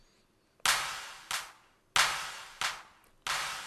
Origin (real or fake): real